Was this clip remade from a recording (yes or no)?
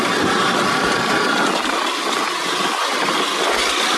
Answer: no